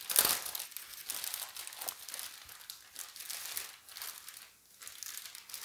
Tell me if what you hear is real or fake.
real